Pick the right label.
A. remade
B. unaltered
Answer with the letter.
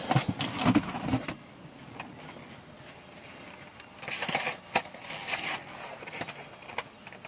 B